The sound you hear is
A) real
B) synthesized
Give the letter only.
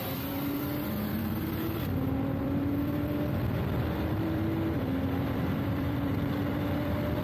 B